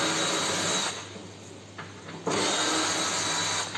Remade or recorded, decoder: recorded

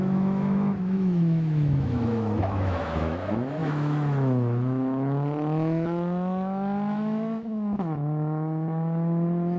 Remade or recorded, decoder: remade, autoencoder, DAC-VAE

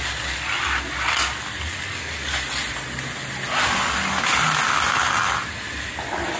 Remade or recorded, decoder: recorded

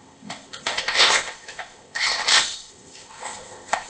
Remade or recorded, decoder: remade, codec, ZipCodec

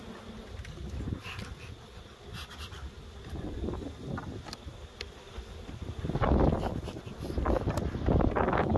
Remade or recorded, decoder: recorded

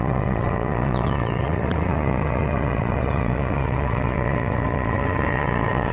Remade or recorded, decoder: remade, vocoder, WaveNeXt